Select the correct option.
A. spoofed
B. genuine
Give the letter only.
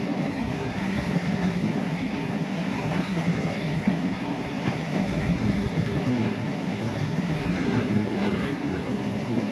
A